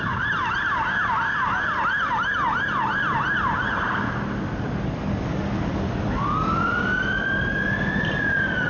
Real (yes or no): yes